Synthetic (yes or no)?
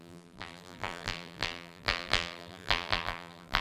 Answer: yes